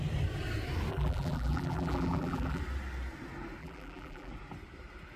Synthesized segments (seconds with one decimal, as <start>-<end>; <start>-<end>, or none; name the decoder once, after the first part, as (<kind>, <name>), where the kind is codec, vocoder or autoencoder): 0.9-2.6 (vocoder, BigVGAN v2); 3.6-4.3

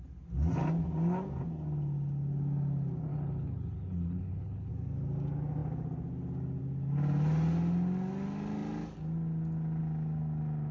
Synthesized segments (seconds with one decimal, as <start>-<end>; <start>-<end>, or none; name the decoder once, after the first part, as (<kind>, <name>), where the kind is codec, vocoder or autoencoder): 3.1-4.7 (codec, HILCodec)

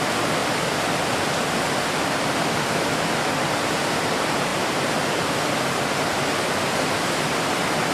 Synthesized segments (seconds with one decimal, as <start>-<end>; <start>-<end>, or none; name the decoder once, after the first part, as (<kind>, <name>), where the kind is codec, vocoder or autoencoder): none

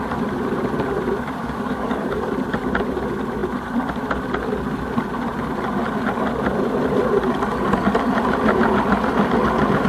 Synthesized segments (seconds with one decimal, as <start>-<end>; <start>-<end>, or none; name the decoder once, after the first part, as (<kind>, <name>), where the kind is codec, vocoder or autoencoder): 1.4-2.3 (codec, DAC)